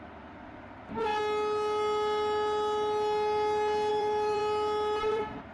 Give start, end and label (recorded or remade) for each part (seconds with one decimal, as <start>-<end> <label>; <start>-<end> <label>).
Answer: 0.0-1.1 remade; 1.1-3.9 recorded; 3.9-4.4 remade; 4.4-5.0 recorded; 5.0-5.5 remade